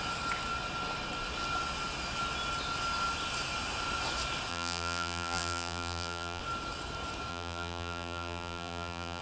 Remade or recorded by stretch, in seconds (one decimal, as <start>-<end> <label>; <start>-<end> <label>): 0.0-4.5 recorded; 4.5-6.4 remade; 6.4-7.3 recorded; 7.3-9.2 remade